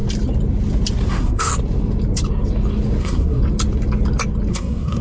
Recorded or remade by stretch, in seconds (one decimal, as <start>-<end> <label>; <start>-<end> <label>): 0.0-1.1 recorded; 1.1-1.5 remade; 1.5-3.0 recorded; 3.0-3.4 remade; 3.4-4.5 recorded; 4.5-5.0 remade